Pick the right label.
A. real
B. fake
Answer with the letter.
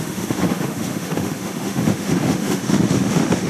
B